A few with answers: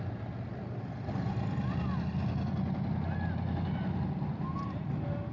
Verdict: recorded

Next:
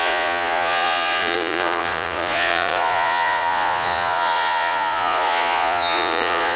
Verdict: remade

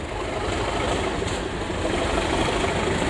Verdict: recorded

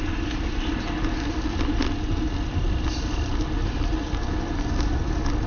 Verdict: recorded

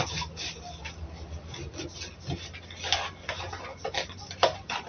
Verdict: recorded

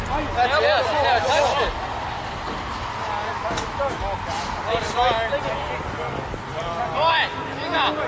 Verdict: recorded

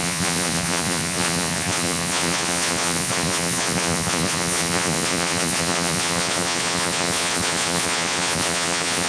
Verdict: remade